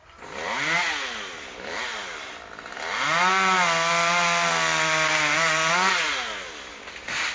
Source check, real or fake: real